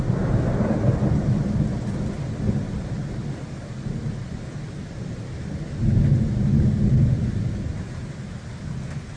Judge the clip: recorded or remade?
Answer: recorded